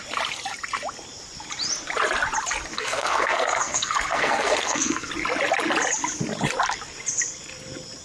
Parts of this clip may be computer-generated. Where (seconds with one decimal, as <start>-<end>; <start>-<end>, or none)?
2.7-5.1